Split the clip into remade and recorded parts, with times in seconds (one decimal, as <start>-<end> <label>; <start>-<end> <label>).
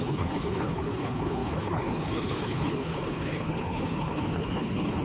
0.0-5.0 remade